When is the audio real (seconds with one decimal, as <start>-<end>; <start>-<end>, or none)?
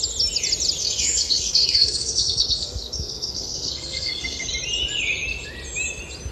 0.0-0.8; 4.5-6.3